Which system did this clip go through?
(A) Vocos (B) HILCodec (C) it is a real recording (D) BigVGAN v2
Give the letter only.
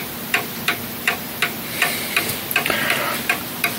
C